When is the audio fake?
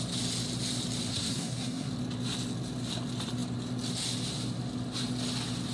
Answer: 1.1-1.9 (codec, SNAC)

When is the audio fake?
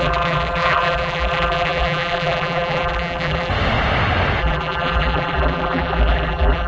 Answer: 0.0-3.5 (vocoder, BigVGAN v2); 4.4-6.7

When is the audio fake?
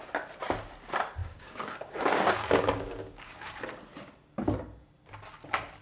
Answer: 1.2-3.6 (codec, DAC)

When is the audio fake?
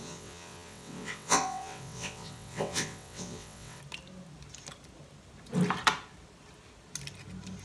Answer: 0.0-3.8 (vocoder, WaveNeXt)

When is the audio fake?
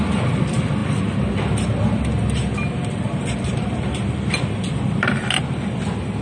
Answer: none